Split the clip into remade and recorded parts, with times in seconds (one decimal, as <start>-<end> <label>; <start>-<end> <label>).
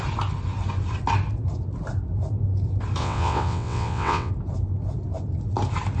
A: 0.0-3.0 recorded; 3.0-4.3 remade; 4.3-6.0 recorded